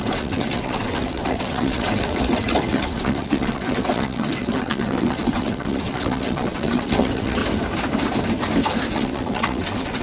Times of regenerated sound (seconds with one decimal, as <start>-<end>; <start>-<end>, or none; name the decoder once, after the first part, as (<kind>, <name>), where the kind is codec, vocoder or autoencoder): 0.0-7.4 (vocoder, WaveNeXt); 8.9-10.0